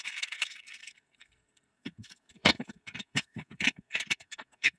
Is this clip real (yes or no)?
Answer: no